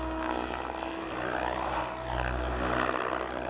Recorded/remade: recorded